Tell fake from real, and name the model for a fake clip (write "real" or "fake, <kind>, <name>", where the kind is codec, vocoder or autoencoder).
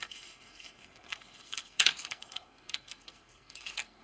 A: fake, codec, SNAC